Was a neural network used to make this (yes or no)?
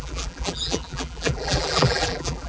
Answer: yes